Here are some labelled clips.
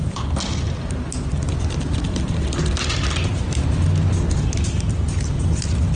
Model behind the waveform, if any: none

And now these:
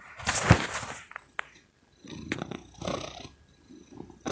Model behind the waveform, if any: none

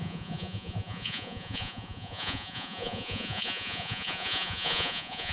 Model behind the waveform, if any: vocoder, Vocos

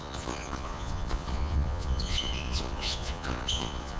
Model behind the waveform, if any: vocoder, Vocos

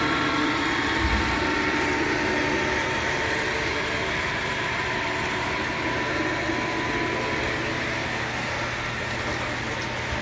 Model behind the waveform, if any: none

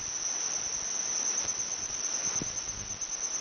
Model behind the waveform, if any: none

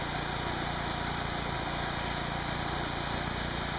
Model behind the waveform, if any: none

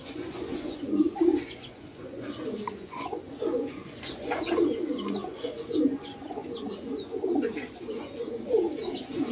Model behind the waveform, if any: vocoder, Vocos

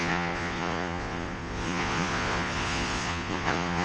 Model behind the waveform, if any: vocoder, Vocos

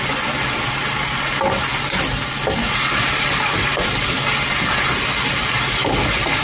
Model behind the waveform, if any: none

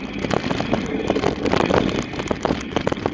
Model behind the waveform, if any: none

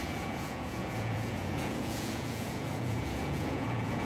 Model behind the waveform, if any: vocoder, Vocos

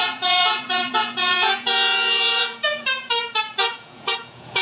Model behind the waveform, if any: vocoder, Vocos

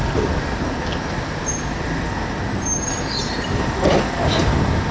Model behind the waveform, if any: none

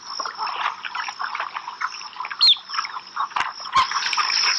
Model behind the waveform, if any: none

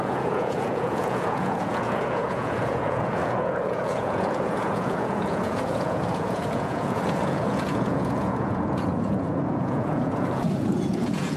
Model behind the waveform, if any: vocoder, Vocos